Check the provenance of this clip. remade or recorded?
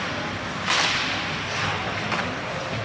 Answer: recorded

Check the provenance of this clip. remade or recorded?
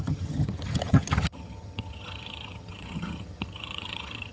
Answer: remade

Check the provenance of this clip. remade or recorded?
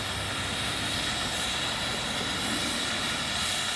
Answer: recorded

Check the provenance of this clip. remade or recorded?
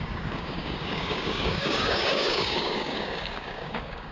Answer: remade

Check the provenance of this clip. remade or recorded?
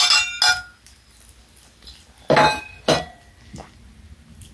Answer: recorded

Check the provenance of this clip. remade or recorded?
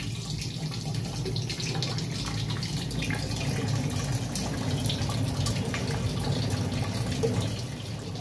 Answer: recorded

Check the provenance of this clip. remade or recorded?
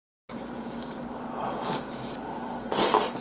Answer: recorded